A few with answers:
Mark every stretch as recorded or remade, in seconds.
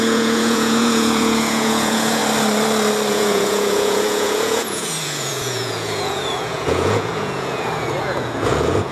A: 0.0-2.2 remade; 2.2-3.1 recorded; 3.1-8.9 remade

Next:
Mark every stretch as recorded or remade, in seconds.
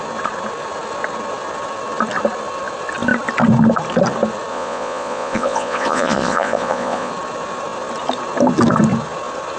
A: 0.0-4.5 recorded; 4.5-7.1 remade; 7.1-9.6 recorded